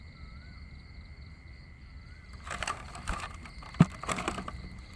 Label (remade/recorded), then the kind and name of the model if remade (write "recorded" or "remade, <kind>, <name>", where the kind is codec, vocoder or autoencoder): recorded